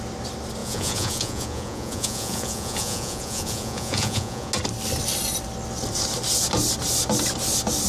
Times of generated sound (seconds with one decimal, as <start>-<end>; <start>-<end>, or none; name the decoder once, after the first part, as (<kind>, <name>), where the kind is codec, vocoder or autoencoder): 0.6-4.5 (vocoder, Vocos)